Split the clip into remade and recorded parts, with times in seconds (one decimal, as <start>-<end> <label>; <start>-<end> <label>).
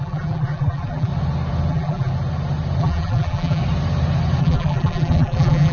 0.0-1.1 remade; 1.1-1.7 recorded; 1.7-2.1 remade; 2.1-2.8 recorded; 2.8-3.6 remade; 3.6-4.4 recorded; 4.4-5.7 remade